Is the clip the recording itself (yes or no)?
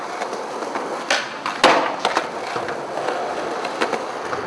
yes